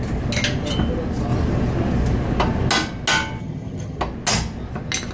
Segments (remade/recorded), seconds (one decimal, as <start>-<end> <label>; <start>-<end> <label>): 0.0-3.4 recorded; 3.4-4.0 remade; 4.0-5.1 recorded